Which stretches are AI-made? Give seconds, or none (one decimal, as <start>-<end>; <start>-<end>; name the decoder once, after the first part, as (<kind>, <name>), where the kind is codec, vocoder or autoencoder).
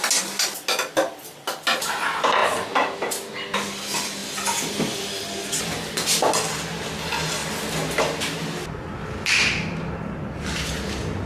none